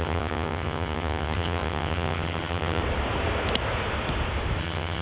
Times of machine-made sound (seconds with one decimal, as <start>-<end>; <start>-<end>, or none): 0.0-2.8; 4.6-5.0